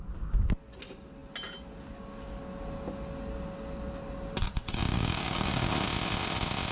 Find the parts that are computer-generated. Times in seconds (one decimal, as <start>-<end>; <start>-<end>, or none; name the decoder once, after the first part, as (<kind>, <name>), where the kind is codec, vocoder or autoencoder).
4.9-5.7 (codec, DAC)